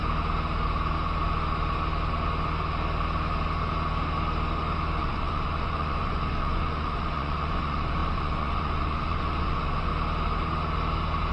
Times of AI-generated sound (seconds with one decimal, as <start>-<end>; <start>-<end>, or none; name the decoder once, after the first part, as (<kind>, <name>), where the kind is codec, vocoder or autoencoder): 5.0-9.9 (vocoder, Vocos)